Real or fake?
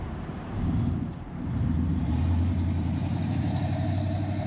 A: fake